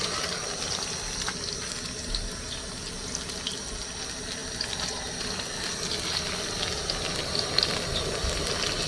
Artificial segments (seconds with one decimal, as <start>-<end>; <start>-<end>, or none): none